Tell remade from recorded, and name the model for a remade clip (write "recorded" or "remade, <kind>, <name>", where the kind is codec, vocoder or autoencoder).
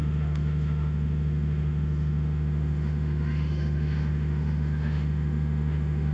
remade, autoencoder, DAC-VAE